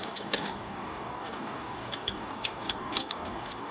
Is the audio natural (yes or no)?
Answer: no